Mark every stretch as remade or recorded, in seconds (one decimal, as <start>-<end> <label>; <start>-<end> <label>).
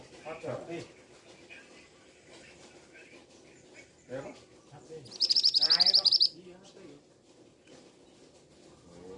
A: 0.0-9.2 recorded